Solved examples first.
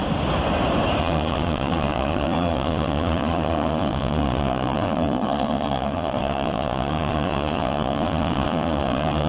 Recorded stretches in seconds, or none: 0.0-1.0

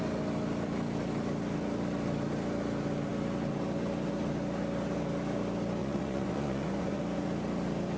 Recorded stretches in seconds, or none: 0.0-5.8; 7.0-8.0

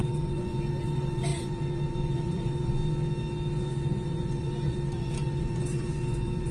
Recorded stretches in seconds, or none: 2.8-3.6

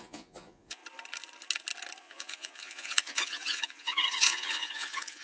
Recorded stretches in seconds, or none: 0.8-2.0

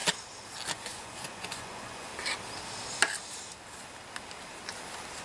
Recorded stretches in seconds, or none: 0.0-0.7; 2.1-5.2

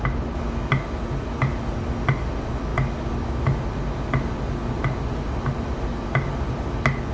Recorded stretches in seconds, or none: 0.0-7.1

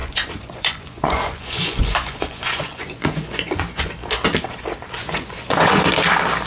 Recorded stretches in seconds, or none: 3.9-5.0; 5.9-6.5

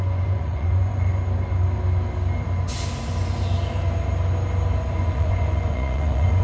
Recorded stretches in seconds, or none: 1.2-5.0